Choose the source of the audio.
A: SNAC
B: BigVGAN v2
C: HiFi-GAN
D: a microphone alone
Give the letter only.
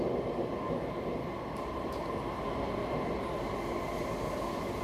D